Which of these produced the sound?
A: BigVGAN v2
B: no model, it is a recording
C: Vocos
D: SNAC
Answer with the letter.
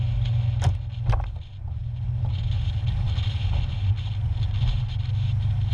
B